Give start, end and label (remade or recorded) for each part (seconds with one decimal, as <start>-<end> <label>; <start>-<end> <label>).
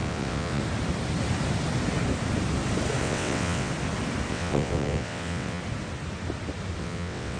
0.0-0.6 remade; 0.6-3.0 recorded; 3.0-3.7 remade; 3.7-4.3 recorded; 4.3-5.6 remade; 5.6-6.8 recorded; 6.8-7.4 remade